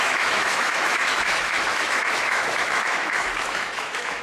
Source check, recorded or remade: remade